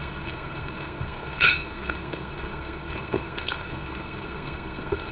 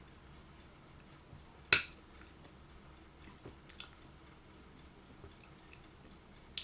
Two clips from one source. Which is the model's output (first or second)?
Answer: first